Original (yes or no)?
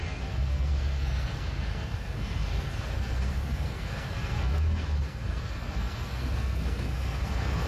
no